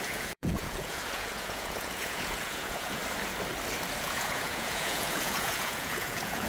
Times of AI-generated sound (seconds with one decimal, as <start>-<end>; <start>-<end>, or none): 0.0-3.0; 4.0-6.5